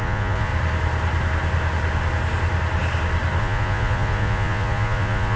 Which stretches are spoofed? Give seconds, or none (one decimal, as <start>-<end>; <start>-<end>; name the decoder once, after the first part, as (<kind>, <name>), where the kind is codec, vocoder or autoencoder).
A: 0.0-0.5 (vocoder, Vocos); 3.4-5.4